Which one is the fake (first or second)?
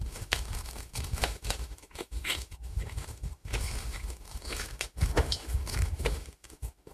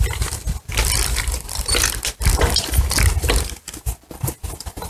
first